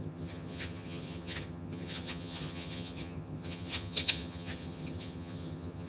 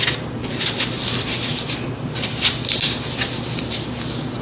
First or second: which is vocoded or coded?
first